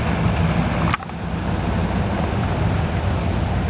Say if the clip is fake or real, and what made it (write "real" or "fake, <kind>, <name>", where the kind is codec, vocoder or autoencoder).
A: real